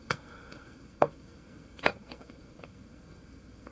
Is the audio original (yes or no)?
no